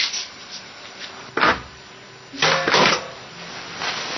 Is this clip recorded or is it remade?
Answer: recorded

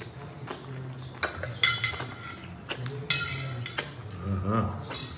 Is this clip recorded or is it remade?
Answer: recorded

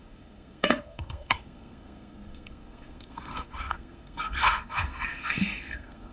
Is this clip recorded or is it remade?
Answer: remade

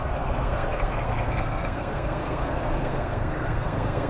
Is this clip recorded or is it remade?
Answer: remade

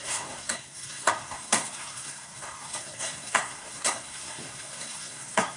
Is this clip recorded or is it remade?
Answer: remade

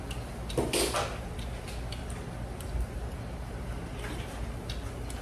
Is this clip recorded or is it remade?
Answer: recorded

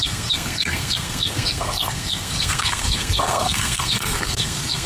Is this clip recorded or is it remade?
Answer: remade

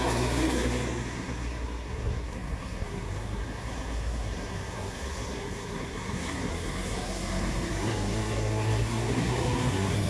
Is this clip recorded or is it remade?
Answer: remade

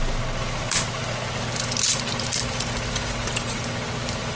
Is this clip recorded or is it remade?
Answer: recorded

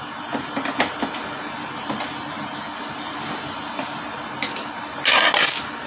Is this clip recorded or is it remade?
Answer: recorded